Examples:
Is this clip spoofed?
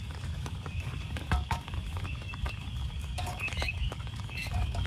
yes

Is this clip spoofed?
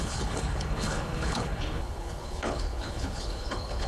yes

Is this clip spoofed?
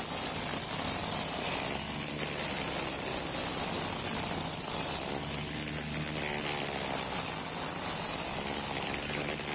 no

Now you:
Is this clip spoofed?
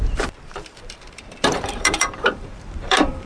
yes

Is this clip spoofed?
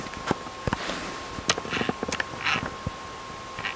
no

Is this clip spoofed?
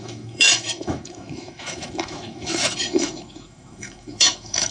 yes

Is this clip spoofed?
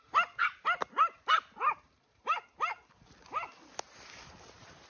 no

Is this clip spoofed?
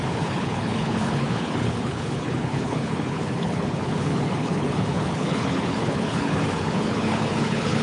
yes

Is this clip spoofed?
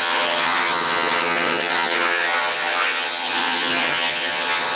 yes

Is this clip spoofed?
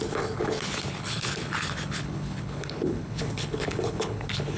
yes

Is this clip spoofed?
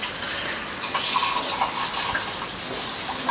no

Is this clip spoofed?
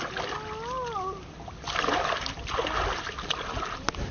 no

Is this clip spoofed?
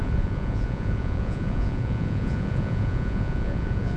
yes